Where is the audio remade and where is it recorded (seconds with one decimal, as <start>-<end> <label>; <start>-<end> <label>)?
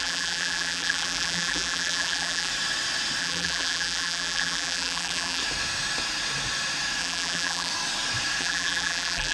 0.0-2.5 remade; 2.5-3.2 recorded; 3.2-5.4 remade; 5.4-7.0 recorded; 7.0-7.7 remade; 7.7-8.4 recorded; 8.4-9.3 remade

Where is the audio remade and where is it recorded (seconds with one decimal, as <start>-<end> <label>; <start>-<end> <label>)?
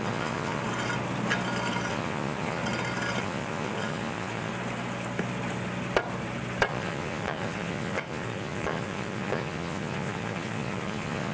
0.0-0.6 remade; 0.6-1.9 recorded; 1.9-2.6 remade; 2.6-3.2 recorded; 3.2-4.5 remade; 4.5-6.7 recorded; 6.7-11.3 remade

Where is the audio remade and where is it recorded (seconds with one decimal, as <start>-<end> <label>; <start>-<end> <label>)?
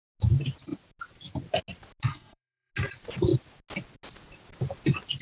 0.0-2.1 recorded; 2.1-2.7 remade; 2.7-5.2 recorded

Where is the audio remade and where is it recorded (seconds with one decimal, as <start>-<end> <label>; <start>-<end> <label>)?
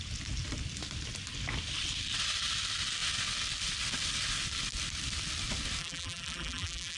0.0-5.8 recorded; 5.8-7.0 remade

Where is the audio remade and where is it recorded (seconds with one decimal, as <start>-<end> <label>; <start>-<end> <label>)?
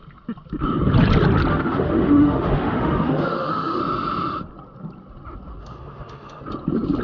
0.0-1.5 recorded; 1.5-3.8 remade; 3.8-5.6 recorded; 5.6-6.4 remade; 6.4-7.0 recorded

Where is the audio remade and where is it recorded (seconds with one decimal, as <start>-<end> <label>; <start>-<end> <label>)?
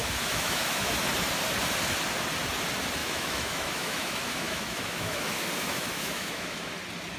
0.0-0.9 remade; 0.9-3.0 recorded; 3.0-6.7 remade; 6.7-7.2 recorded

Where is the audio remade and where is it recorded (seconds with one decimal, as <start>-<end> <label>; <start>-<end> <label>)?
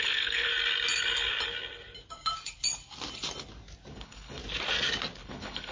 0.0-0.5 remade; 0.5-3.9 recorded; 3.9-4.4 remade; 4.4-5.2 recorded; 5.2-5.7 remade